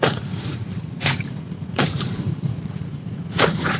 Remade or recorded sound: remade